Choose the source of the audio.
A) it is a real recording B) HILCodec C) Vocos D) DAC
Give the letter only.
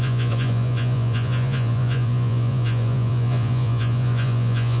C